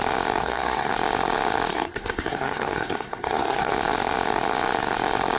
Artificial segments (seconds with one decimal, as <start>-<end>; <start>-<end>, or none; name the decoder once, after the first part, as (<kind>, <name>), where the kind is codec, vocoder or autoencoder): 0.4-0.9 (codec, SNAC); 1.7-3.7